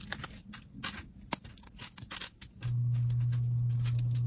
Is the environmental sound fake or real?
real